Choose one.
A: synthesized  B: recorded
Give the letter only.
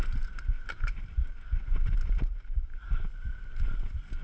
B